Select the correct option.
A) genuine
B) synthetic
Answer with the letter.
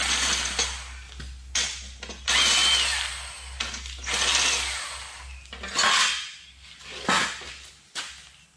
A